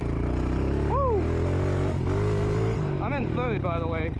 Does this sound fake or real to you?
real